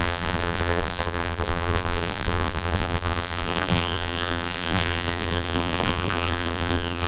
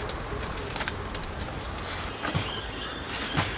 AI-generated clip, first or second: first